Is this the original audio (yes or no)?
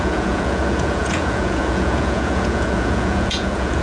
no